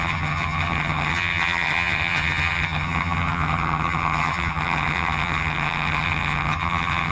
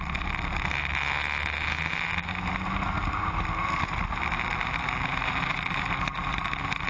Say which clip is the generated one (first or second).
first